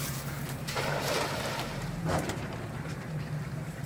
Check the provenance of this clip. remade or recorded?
remade